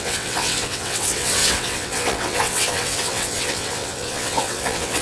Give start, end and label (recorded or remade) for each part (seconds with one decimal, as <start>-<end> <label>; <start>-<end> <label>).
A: 0.0-5.0 remade